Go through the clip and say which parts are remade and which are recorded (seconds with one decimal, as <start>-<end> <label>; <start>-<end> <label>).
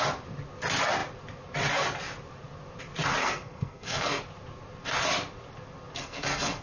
0.0-3.2 recorded; 3.2-4.2 remade; 4.2-6.0 recorded; 6.0-6.6 remade